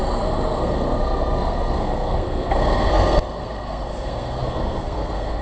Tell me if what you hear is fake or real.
fake